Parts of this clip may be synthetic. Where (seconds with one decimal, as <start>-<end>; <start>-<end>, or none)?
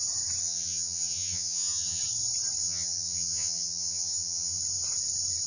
0.4-2.0; 2.6-4.6